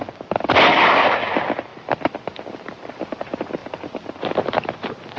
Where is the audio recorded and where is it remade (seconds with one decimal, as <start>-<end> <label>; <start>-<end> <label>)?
0.0-5.2 recorded